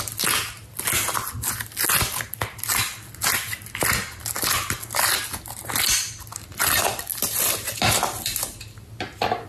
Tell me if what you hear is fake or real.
real